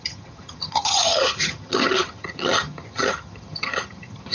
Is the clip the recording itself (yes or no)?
no